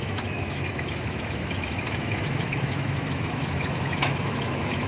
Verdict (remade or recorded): remade